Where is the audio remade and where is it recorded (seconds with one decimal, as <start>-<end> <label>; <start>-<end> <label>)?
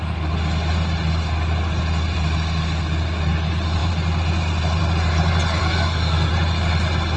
0.0-5.6 recorded; 5.6-6.3 remade; 6.3-7.2 recorded